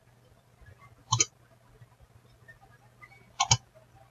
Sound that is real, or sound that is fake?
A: real